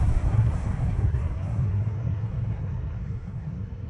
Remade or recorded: remade